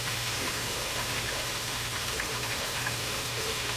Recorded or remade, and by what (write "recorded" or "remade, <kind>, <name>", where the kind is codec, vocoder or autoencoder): remade, autoencoder, DAC-VAE